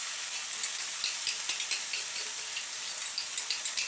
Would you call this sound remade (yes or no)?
no